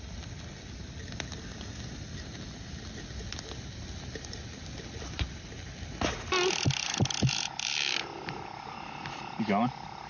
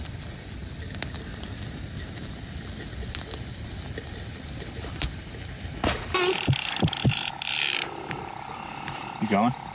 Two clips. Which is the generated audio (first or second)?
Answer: second